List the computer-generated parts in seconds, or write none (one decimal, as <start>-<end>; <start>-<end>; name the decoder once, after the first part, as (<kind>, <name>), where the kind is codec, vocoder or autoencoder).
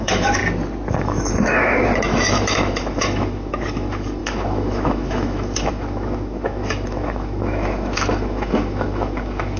0.0-0.4 (autoencoder, DAC-VAE); 0.9-9.6